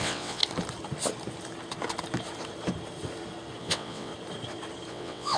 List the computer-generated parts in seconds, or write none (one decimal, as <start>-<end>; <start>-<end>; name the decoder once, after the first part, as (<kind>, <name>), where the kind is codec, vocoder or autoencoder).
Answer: 0.0-0.4 (vocoder, WaveNeXt); 3.6-4.1; 4.9-5.4